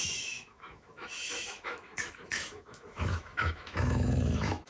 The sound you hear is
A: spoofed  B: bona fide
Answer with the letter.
A